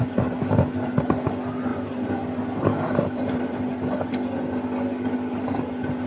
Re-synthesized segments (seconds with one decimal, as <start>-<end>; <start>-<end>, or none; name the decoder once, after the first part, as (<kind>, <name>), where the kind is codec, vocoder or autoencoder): none